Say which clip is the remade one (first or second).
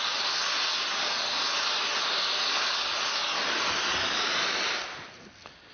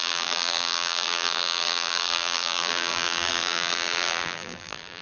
second